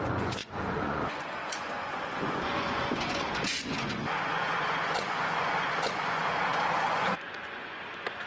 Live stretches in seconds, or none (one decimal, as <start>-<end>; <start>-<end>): none